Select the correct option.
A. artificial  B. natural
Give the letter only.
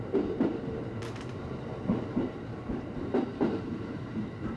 A